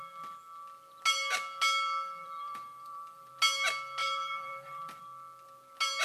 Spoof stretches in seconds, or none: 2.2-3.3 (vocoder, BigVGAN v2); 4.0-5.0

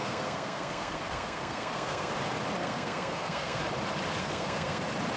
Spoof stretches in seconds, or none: 0.0-2.1 (codec, SNAC); 2.6-3.6; 4.2-4.8

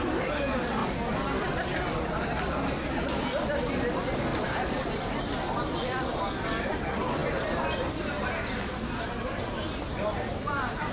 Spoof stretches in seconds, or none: 4.3-5.2 (vocoder, BigVGAN v2)

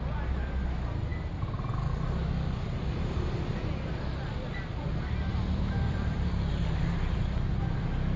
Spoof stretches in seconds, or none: 5.3-6.9 (vocoder, BigVGAN v2)